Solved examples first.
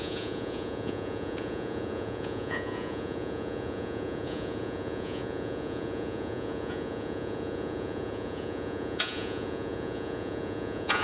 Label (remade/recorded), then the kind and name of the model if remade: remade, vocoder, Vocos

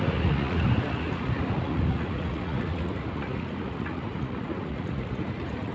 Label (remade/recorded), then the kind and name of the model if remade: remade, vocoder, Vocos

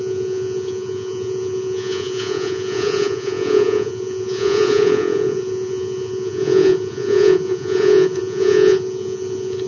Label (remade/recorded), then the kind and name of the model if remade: remade, vocoder, Vocos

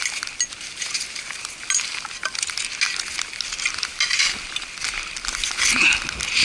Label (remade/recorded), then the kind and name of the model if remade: recorded